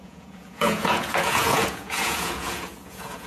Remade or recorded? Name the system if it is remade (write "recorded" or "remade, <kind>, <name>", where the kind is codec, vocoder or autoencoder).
remade, vocoder, Vocos